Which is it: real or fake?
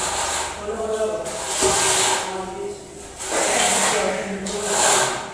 real